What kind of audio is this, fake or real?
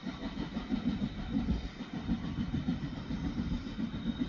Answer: real